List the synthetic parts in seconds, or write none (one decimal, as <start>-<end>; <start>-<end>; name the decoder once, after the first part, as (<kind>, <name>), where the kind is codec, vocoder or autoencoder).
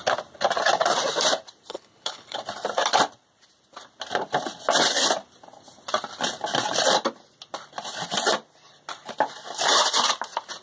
1.7-2.4 (codec, HILCodec)